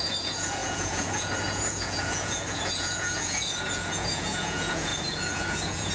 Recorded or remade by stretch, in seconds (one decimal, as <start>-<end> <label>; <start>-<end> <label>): 0.0-5.9 remade